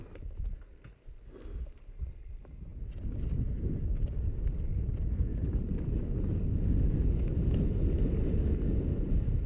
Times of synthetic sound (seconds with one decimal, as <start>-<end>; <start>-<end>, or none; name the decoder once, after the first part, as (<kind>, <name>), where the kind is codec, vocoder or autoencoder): none